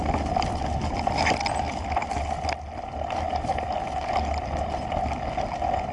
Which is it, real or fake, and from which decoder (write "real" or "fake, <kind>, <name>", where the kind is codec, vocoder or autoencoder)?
real